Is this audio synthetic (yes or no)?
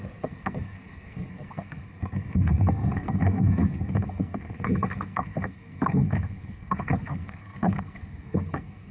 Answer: yes